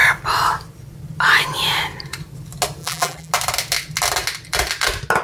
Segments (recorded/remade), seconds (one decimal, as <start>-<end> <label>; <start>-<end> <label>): 0.0-2.8 recorded; 2.8-3.3 remade; 3.3-5.2 recorded